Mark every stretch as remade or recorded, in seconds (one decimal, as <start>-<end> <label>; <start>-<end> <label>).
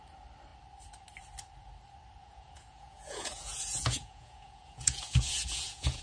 0.0-2.2 recorded; 2.2-6.0 remade